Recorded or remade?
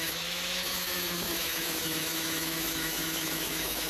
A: remade